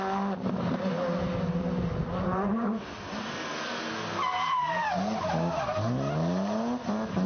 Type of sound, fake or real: real